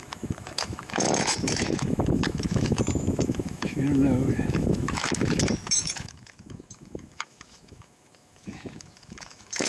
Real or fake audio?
fake